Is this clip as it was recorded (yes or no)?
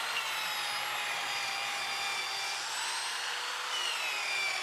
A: yes